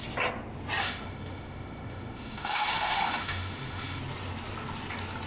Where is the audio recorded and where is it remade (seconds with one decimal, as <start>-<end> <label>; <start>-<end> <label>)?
0.0-0.8 recorded; 0.8-4.0 remade; 4.0-5.3 recorded